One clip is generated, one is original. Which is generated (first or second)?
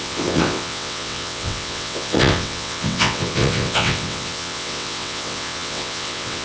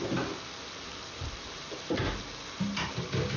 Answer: first